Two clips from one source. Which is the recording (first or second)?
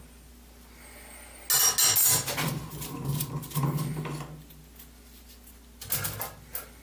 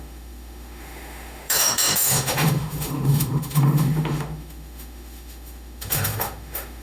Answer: first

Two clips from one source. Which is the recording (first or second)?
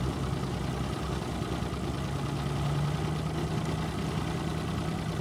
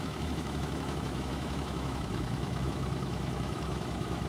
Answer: first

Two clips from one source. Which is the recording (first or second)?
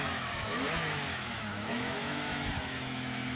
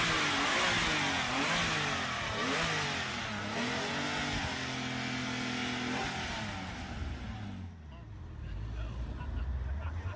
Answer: second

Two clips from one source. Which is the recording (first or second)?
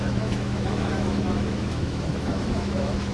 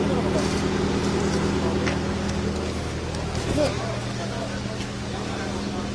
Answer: second